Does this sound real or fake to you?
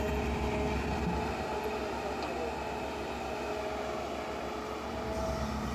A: real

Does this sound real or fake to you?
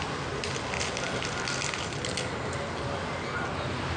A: real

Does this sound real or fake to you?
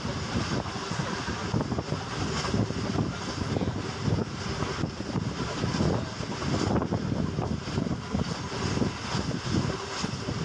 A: real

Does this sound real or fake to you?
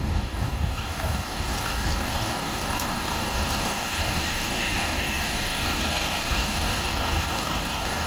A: fake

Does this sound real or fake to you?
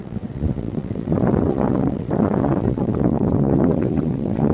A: fake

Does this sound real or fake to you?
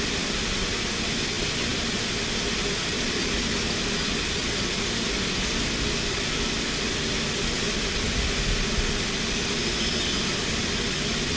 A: real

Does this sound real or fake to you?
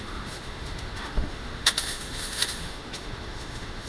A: fake